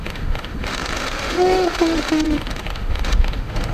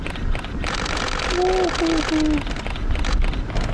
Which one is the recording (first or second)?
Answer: second